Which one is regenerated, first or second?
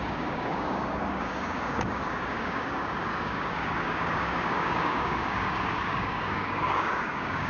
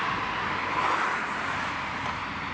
first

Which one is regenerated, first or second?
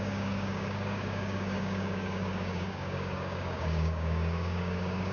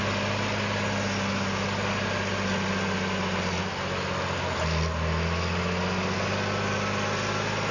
first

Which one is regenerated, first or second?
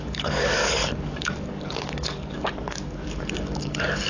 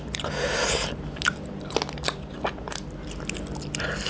first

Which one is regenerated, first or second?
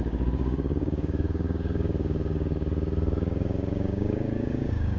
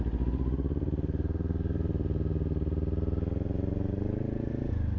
first